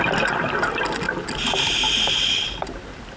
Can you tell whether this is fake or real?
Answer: real